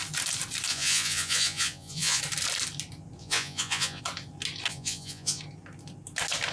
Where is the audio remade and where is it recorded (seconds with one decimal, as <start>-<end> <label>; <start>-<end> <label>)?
0.0-0.7 recorded; 0.7-2.2 remade; 2.2-3.2 recorded; 3.2-4.0 remade; 4.0-4.7 recorded; 4.7-5.4 remade; 5.4-6.5 recorded